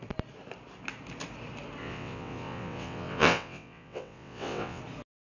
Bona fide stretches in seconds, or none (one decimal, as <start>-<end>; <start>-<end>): 0.0-1.8; 4.8-5.3